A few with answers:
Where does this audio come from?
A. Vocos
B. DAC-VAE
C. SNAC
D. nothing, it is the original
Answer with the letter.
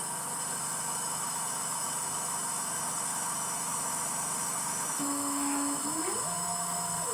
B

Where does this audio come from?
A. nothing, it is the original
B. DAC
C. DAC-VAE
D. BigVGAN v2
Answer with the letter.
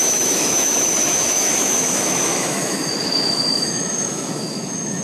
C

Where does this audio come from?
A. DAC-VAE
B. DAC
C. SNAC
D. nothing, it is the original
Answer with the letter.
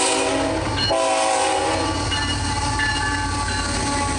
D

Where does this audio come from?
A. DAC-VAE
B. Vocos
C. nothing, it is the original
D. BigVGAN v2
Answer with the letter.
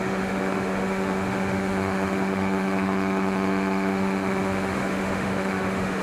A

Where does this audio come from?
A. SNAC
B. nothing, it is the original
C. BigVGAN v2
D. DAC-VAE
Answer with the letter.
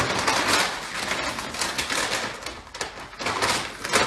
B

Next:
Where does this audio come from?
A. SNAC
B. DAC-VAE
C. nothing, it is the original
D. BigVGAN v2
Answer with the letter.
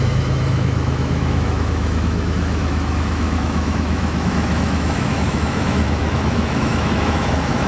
B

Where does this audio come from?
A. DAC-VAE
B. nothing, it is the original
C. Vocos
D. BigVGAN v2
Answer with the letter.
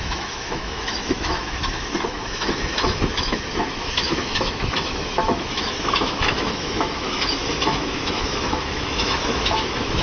A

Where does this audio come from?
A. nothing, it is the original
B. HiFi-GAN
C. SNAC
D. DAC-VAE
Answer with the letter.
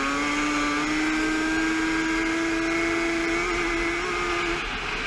A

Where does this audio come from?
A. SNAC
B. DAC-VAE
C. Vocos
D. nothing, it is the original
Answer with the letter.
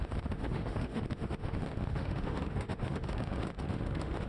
B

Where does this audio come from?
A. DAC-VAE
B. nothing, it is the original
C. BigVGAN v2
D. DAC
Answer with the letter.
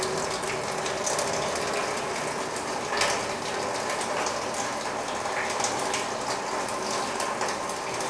B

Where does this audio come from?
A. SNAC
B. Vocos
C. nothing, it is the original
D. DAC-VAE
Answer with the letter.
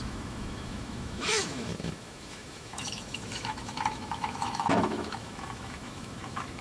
D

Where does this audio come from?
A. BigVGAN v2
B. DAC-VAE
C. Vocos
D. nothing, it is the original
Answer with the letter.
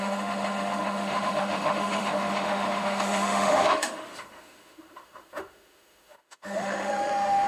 B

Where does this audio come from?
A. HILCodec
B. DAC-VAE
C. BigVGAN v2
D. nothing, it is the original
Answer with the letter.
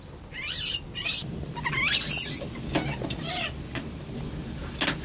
D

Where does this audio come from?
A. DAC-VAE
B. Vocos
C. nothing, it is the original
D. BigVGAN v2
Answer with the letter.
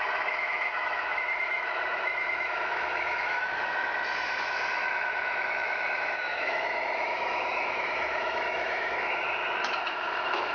A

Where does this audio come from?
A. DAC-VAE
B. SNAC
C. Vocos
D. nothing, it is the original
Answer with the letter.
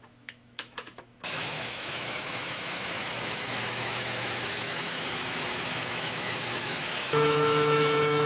A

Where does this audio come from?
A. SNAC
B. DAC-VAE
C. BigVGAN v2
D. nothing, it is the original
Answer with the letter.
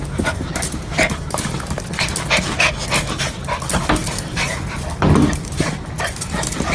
D